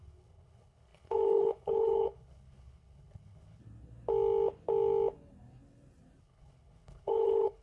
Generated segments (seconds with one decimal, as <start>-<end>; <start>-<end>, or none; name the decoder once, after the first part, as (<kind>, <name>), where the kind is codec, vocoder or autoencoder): 0.0-3.6 (codec, HILCodec); 6.2-7.6